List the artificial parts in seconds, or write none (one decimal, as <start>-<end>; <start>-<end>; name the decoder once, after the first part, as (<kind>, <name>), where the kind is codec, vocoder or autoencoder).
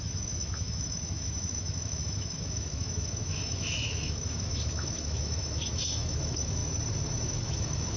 0.0-6.6 (autoencoder, DAC-VAE); 7.3-8.0